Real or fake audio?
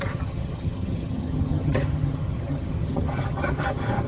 fake